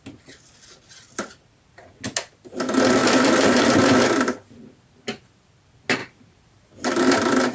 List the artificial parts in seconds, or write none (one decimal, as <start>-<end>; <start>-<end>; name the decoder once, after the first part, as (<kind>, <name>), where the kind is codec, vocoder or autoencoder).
3.0-3.7 (vocoder, BigVGAN v2); 6.0-6.9